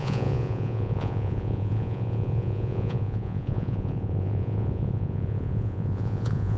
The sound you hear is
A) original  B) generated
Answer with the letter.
B